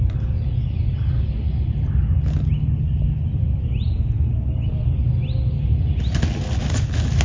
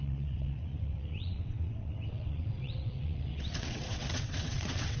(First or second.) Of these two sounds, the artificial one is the second